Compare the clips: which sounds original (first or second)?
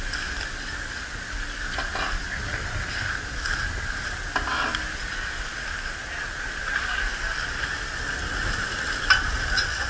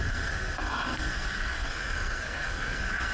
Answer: first